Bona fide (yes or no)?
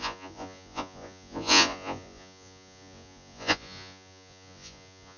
no